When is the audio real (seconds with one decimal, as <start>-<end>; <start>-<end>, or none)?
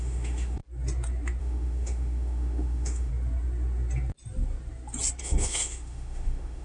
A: 0.6-1.4; 3.1-5.2